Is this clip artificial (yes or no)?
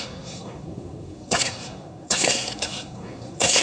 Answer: yes